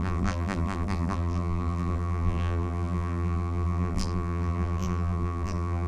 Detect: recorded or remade remade